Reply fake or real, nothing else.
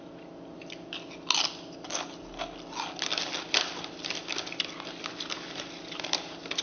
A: real